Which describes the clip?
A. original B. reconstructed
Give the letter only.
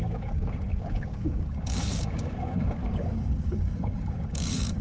B